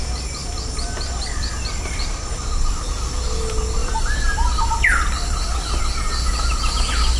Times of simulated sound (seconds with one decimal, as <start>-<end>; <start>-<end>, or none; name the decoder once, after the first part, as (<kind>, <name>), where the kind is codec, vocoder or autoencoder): 0.4-2.8 (vocoder, BigVGAN v2); 3.8-5.8